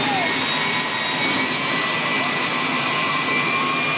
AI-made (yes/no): no